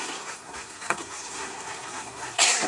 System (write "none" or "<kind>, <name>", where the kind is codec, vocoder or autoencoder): codec, SNAC